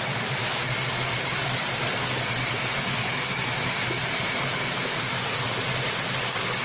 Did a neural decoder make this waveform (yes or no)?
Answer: no